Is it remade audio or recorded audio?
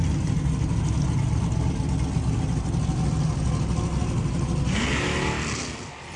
recorded